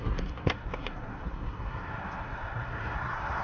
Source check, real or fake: fake